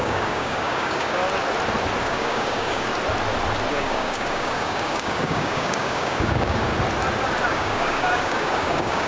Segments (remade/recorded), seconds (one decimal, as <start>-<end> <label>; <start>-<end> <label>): 0.0-1.2 remade; 1.2-2.0 recorded; 2.0-2.9 remade; 2.9-3.7 recorded; 3.7-6.7 remade; 6.7-7.5 recorded; 7.5-9.1 remade